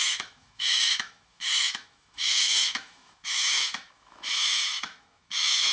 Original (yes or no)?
no